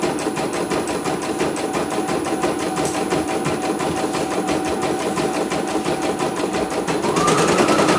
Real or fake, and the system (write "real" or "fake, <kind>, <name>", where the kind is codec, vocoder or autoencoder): real